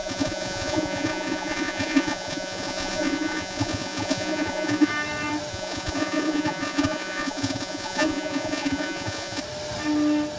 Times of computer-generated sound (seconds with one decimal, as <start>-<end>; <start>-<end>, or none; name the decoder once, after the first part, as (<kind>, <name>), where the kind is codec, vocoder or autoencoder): 0.0-4.9 (vocoder, Vocos); 5.5-9.4